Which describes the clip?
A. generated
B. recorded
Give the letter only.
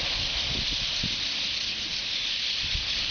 B